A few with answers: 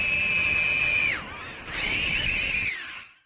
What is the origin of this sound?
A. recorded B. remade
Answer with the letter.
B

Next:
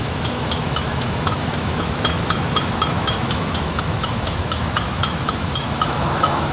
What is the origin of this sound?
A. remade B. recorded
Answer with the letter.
A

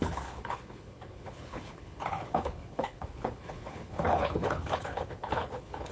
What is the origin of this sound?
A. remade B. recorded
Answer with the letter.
A